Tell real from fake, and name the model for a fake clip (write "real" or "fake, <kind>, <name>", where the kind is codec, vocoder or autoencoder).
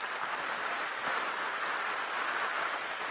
real